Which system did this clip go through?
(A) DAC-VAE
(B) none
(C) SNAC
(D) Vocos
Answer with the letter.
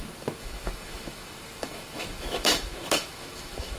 A